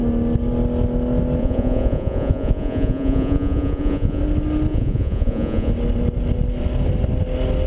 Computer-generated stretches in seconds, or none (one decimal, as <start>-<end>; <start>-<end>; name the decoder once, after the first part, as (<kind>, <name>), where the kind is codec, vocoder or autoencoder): 1.4-4.2 (vocoder, Vocos); 4.7-5.7